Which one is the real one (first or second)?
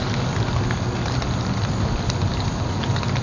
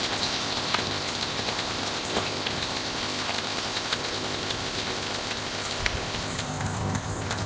first